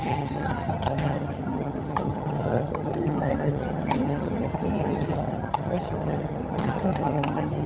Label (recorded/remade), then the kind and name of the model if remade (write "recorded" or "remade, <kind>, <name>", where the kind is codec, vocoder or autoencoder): remade, vocoder, HiFi-GAN